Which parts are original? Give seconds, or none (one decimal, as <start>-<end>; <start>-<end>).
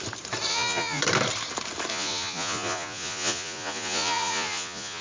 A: 0.0-0.5; 1.0-1.9